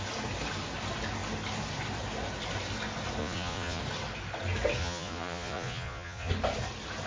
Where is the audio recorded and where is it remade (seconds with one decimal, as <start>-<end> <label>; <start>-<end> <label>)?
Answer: 0.0-3.2 recorded; 3.2-3.8 remade; 3.8-4.8 recorded; 4.8-6.3 remade; 6.3-7.1 recorded

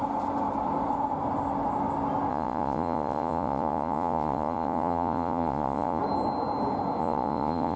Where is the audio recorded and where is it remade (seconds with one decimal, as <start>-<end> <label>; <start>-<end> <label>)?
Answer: 0.0-2.3 recorded; 2.3-6.0 remade; 6.0-7.0 recorded; 7.0-7.8 remade